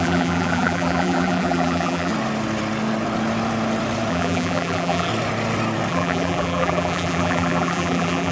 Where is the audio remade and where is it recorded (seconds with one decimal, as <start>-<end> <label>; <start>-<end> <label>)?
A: 0.0-2.1 remade; 2.1-4.1 recorded; 4.1-5.1 remade; 5.1-5.9 recorded; 5.9-8.3 remade